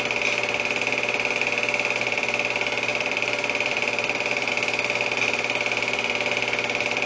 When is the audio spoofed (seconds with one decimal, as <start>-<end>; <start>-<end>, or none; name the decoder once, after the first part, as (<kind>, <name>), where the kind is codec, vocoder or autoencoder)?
2.9-4.5 (vocoder, BigVGAN v2)